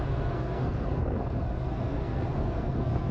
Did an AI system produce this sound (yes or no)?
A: yes